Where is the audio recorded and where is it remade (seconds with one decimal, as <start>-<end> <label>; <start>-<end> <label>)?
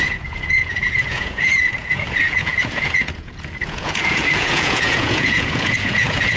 0.0-6.4 remade